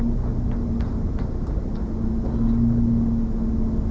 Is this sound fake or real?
real